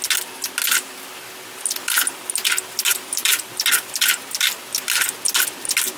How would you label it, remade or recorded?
recorded